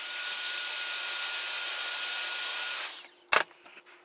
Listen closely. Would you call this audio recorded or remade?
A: recorded